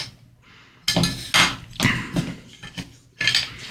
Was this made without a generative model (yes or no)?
yes